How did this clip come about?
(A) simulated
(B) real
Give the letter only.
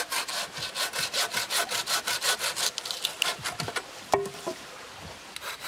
B